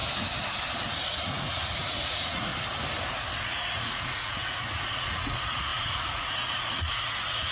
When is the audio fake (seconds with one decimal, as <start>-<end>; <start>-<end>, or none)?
1.1-2.5; 3.4-7.5